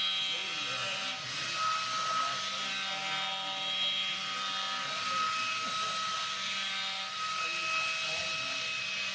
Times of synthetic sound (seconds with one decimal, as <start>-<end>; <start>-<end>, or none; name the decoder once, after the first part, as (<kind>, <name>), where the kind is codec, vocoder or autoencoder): none